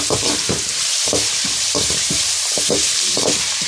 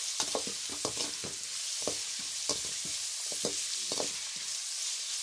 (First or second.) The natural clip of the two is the second